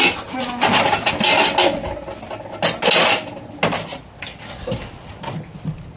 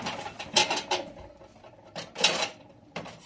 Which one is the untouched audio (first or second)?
first